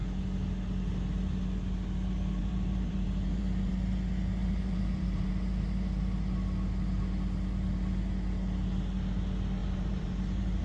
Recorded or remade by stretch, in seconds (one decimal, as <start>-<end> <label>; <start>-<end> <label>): 0.0-2.4 recorded; 2.4-3.7 remade; 3.7-4.4 recorded; 4.4-5.3 remade; 5.3-9.6 recorded; 9.6-10.6 remade